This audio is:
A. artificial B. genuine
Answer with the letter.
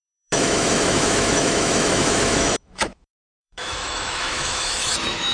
A